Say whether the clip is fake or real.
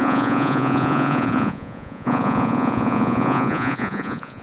fake